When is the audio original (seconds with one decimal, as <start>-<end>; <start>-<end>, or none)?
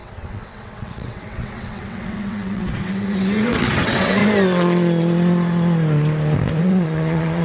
4.2-6.6